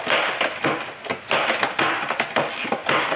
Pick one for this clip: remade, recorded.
recorded